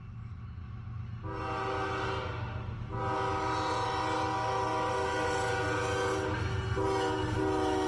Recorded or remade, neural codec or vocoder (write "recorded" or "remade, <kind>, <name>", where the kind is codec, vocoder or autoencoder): recorded